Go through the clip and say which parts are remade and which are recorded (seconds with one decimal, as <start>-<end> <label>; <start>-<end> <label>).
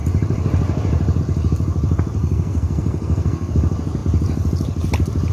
0.0-2.2 recorded; 2.2-3.5 remade; 3.5-5.3 recorded